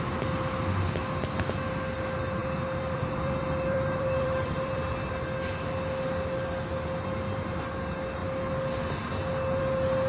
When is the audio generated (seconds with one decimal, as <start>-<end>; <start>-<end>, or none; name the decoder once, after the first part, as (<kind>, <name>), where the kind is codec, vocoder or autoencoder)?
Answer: 2.4-5.1 (vocoder, BigVGAN v2)